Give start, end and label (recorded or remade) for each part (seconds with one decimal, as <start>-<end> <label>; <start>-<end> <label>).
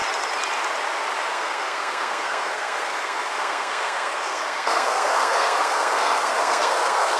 0.0-1.3 recorded; 1.3-7.2 remade